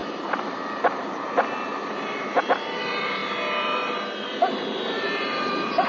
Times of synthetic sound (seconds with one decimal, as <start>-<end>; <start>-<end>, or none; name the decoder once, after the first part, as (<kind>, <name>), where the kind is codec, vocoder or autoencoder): 0.0-3.2 (vocoder, BigVGAN v2); 4.5-5.9